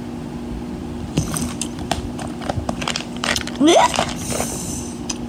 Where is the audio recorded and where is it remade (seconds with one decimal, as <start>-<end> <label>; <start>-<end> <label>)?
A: 0.0-0.8 recorded; 0.8-3.3 remade; 3.3-3.7 recorded; 3.7-4.8 remade; 4.8-5.3 recorded